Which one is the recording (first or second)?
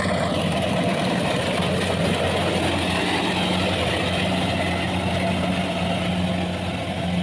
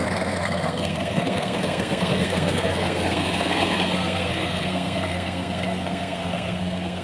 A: first